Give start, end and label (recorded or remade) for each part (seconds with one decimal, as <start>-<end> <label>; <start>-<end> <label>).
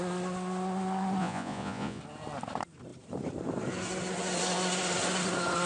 0.0-1.2 recorded; 1.2-2.0 remade; 2.0-5.7 recorded